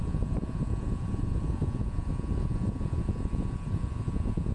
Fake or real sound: fake